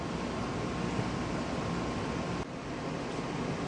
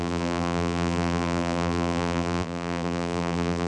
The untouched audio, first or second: first